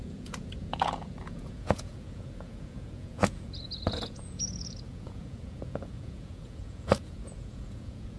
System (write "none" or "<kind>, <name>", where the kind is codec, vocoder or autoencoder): vocoder, Vocos